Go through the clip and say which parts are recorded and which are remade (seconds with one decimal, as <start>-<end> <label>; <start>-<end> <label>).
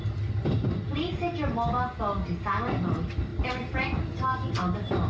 0.0-5.1 recorded